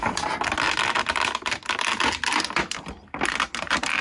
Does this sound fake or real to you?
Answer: real